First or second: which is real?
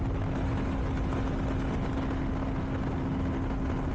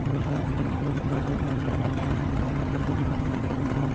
first